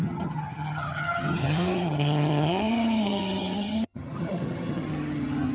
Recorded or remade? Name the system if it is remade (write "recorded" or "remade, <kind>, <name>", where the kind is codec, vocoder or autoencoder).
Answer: remade, vocoder, HiFi-GAN